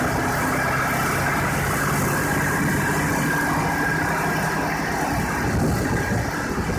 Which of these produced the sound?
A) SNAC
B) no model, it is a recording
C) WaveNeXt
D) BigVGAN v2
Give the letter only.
B